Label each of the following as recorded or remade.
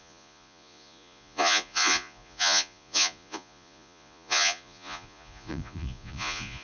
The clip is remade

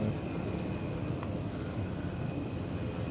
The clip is recorded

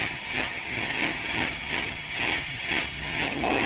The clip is remade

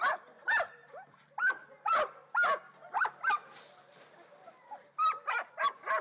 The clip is recorded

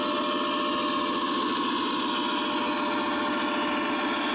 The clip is recorded